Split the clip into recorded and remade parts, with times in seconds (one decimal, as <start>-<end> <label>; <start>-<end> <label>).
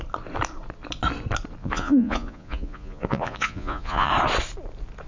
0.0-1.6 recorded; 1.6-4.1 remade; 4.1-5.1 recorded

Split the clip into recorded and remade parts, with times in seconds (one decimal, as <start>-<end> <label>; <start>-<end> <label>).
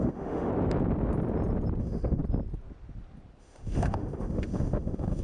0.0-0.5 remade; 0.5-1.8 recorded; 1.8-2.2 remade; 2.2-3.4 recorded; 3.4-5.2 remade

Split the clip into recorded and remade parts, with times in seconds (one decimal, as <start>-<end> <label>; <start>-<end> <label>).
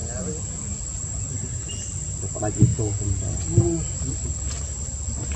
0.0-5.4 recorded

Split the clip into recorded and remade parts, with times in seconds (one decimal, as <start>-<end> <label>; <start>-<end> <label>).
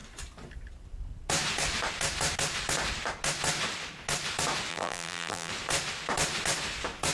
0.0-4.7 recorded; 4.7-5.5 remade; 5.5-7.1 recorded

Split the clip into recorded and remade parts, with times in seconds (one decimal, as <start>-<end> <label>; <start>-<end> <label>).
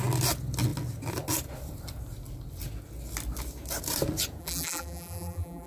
0.0-4.4 recorded; 4.4-5.7 remade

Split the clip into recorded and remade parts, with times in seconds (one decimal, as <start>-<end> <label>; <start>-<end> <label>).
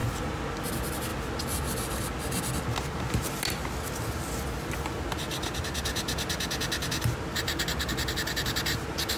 0.0-9.2 recorded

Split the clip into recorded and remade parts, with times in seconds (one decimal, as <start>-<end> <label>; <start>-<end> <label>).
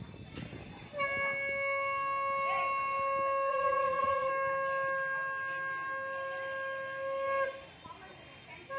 0.0-3.5 recorded; 3.5-4.3 remade; 4.3-8.8 recorded